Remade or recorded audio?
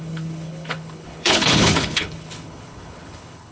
remade